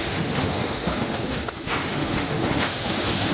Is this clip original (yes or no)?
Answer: no